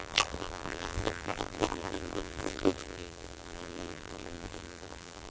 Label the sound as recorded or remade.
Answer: remade